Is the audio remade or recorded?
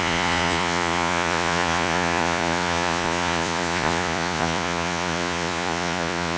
remade